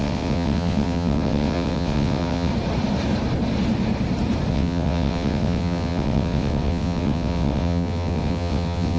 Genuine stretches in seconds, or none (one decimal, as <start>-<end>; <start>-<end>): 2.5-4.5